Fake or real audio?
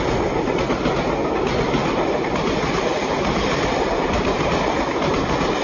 real